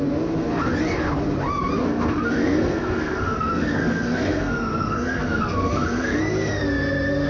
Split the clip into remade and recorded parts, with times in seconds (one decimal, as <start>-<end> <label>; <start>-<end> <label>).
0.0-1.8 recorded; 1.8-6.2 remade; 6.2-7.3 recorded